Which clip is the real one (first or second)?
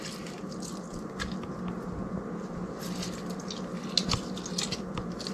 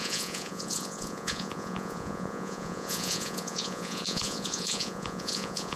first